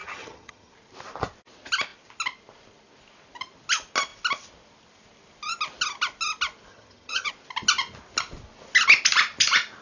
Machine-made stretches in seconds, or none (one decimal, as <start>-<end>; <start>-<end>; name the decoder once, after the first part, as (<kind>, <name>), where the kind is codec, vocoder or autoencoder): 0.0-0.7 (vocoder, HiFi-GAN); 6.7-7.3